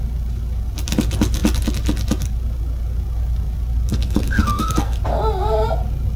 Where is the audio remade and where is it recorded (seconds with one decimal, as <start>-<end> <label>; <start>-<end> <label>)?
0.0-3.9 recorded; 3.9-5.0 remade; 5.0-6.2 recorded